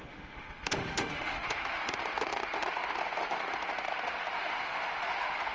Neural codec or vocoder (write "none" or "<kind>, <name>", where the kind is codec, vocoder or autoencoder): autoencoder, DAC-VAE